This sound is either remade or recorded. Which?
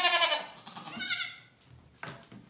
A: recorded